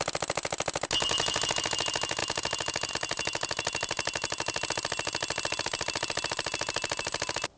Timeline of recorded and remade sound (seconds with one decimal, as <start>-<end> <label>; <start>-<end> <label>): 0.0-7.6 recorded